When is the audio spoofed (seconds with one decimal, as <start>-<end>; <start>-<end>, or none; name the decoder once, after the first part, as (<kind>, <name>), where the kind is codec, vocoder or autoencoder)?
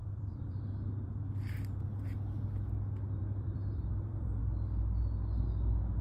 0.0-1.1 (vocoder, BigVGAN v2); 3.2-4.4